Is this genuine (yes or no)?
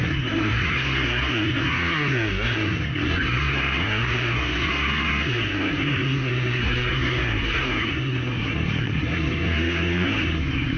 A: no